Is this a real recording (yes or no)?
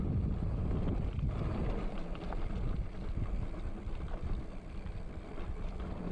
no